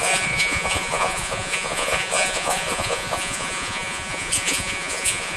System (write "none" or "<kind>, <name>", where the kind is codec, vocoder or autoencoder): vocoder, Vocos